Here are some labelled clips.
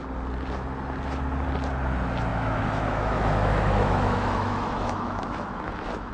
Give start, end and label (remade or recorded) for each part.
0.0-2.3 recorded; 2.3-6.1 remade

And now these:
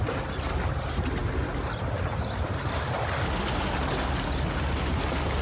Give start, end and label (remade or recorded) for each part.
0.0-5.4 recorded

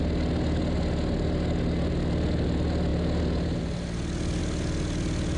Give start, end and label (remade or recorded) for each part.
0.0-5.4 recorded

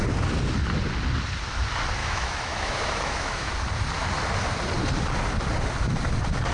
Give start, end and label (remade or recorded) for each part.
0.0-2.0 recorded; 2.0-3.5 remade; 3.5-6.5 recorded